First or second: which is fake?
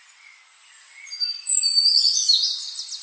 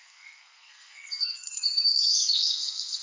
second